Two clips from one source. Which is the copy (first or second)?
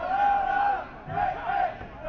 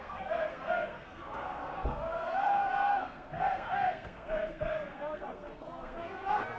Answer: second